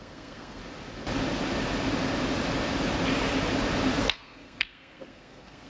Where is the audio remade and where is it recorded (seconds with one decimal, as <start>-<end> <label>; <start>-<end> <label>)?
0.0-0.6 remade; 0.6-4.0 recorded; 4.0-5.7 remade

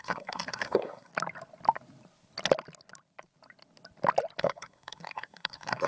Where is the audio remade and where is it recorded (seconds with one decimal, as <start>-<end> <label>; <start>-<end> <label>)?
0.0-1.1 remade; 1.1-4.4 recorded; 4.4-5.9 remade